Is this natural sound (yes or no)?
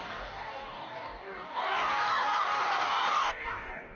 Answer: no